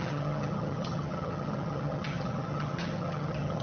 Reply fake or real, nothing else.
fake